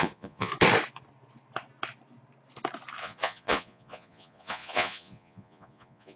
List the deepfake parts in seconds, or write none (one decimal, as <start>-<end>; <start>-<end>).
0.0-0.5; 3.0-6.2